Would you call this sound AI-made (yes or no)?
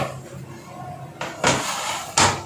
no